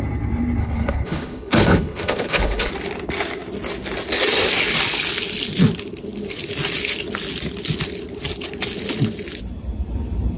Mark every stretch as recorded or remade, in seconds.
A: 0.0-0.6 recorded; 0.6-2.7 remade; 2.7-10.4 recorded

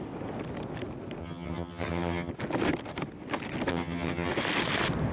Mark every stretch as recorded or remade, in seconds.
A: 0.0-1.2 recorded; 1.2-2.3 remade; 2.3-3.7 recorded; 3.7-4.3 remade; 4.3-5.1 recorded